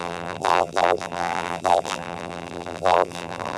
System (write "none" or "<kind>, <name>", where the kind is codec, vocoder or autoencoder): vocoder, BigVGAN v2